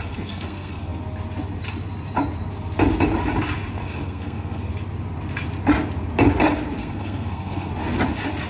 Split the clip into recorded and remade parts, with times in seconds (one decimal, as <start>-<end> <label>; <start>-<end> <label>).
0.0-1.0 remade; 1.0-3.8 recorded; 3.8-4.7 remade; 4.7-6.8 recorded; 6.8-7.7 remade; 7.7-8.5 recorded